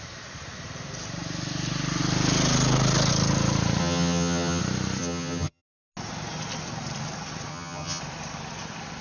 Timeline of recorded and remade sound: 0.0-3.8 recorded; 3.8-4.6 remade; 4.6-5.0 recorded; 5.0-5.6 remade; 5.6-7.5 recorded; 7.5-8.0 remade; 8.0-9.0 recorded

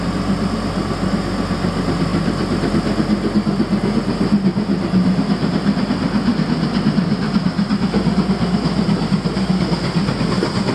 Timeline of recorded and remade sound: 0.0-10.7 recorded

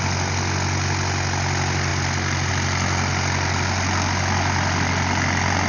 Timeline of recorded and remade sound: 0.0-5.7 recorded

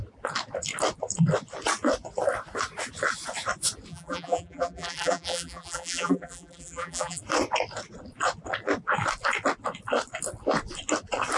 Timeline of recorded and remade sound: 0.0-3.9 recorded; 3.9-7.2 remade; 7.2-11.4 recorded

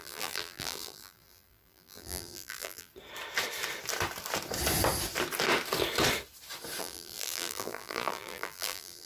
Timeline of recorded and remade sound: 0.0-2.9 remade; 2.9-6.8 recorded; 6.8-9.1 remade